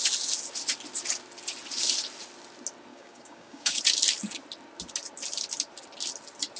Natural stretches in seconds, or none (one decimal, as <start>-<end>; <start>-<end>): 0.0-2.9; 3.8-6.6